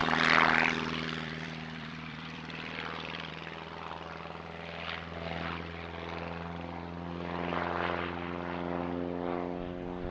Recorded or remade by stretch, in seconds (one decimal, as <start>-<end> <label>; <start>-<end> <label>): 0.0-3.3 remade; 3.3-10.1 recorded